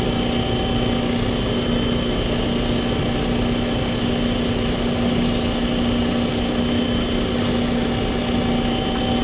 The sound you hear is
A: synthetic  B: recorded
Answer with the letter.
B